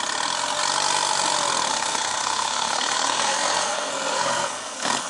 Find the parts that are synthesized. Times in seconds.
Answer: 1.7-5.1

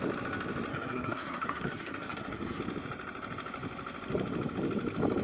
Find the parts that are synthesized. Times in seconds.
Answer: 0.7-2.6

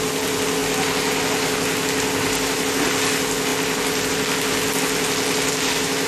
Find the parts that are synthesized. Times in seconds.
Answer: none

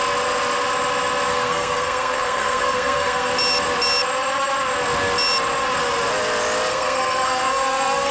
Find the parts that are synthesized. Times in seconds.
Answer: 1.3-3.3; 6.7-8.1